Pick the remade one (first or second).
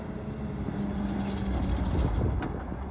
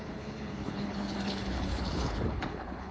second